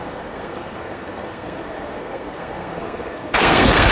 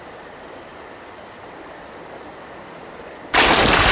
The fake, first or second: first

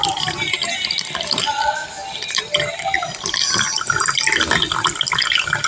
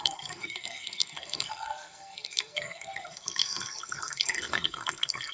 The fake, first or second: second